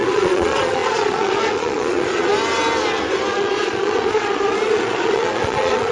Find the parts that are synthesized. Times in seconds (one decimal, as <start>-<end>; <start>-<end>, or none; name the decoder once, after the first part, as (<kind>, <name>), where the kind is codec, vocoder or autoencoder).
0.0-2.3 (vocoder, Vocos); 3.3-5.9